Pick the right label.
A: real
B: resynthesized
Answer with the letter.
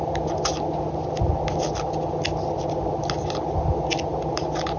A